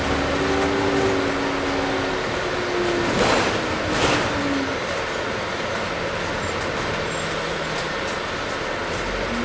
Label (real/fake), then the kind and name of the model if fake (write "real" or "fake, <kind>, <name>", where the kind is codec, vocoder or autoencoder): real